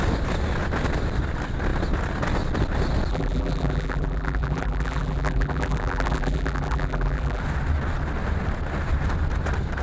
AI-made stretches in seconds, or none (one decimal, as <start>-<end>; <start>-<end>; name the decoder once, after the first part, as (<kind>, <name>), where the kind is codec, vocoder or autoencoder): 3.1-7.4 (vocoder, BigVGAN v2)